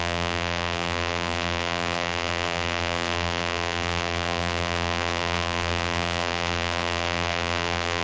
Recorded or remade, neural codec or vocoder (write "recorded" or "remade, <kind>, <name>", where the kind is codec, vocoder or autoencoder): remade, vocoder, BigVGAN v2